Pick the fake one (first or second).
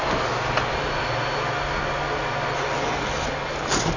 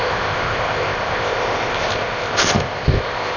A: second